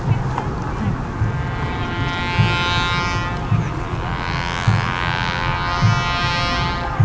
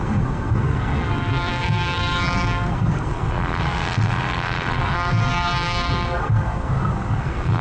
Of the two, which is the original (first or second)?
first